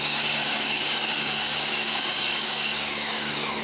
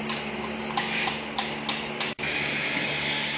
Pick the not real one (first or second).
first